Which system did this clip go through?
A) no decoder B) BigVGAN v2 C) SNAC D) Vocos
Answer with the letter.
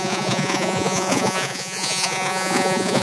D